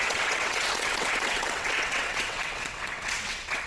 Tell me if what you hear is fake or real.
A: fake